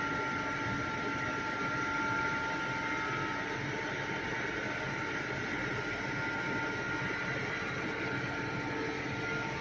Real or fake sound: real